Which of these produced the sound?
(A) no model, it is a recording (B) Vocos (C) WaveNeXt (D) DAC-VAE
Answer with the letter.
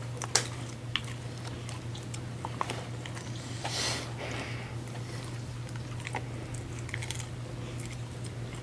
A